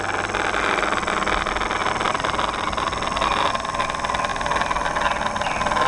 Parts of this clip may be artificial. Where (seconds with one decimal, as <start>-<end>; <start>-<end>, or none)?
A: none